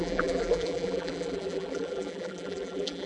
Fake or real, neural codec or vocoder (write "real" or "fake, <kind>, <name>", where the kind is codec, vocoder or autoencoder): fake, vocoder, BigVGAN v2